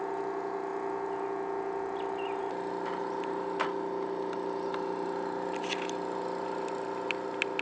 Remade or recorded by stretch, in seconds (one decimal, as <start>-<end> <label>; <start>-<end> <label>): 0.0-7.6 recorded